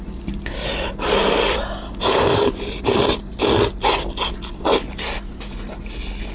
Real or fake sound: real